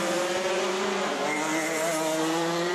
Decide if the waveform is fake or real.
fake